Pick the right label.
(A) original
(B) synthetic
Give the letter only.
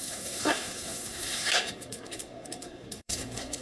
B